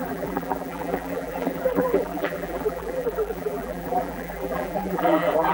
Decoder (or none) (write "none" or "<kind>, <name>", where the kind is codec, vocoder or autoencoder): vocoder, BigVGAN v2